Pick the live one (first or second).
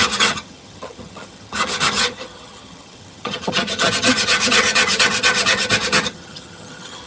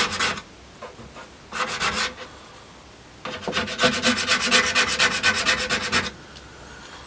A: second